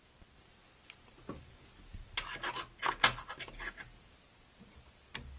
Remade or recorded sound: recorded